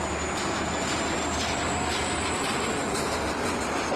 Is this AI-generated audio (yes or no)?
no